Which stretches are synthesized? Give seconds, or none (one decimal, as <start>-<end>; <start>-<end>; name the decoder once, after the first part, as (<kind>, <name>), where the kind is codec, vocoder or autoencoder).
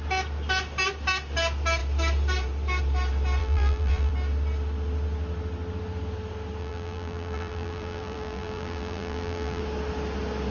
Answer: 3.4-4.1 (vocoder, BigVGAN v2); 6.6-9.6